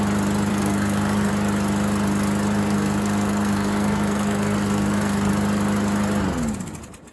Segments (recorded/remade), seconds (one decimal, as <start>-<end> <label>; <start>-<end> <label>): 0.0-0.5 recorded; 0.5-1.3 remade; 1.3-2.6 recorded; 2.6-5.3 remade; 5.3-7.1 recorded